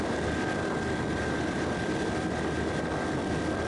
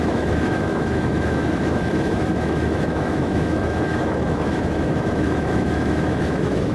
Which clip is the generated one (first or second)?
second